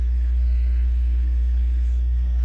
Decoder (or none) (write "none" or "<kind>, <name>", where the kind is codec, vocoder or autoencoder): codec, SNAC